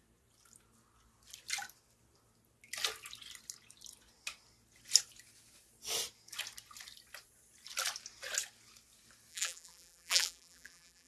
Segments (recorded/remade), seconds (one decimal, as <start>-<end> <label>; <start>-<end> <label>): 0.0-9.3 recorded; 9.3-11.1 remade